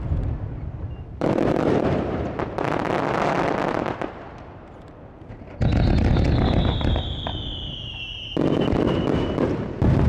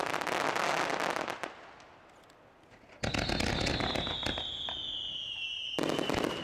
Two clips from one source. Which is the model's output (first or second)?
first